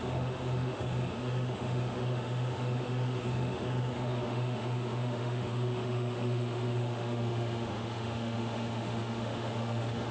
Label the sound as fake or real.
fake